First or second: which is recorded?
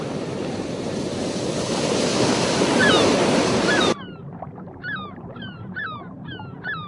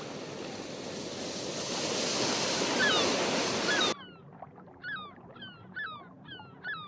second